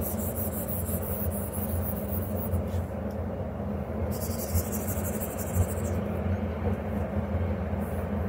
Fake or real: real